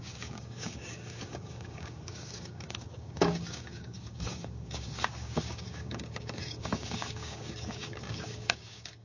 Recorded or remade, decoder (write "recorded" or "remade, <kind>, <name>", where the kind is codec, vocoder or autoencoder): remade, codec, DAC